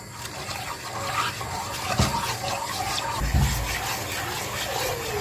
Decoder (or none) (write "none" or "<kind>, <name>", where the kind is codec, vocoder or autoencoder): none